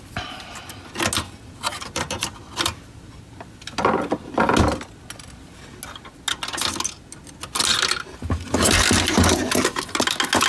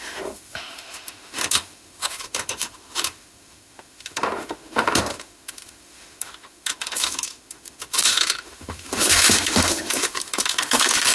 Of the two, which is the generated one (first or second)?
second